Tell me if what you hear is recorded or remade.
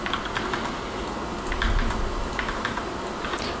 recorded